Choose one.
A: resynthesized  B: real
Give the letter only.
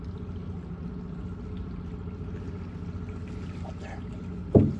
B